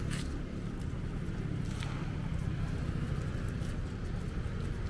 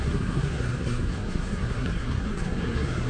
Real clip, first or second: first